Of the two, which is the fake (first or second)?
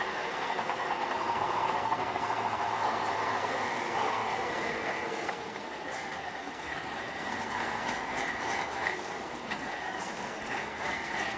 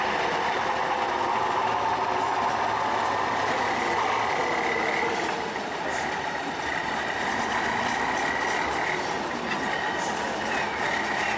first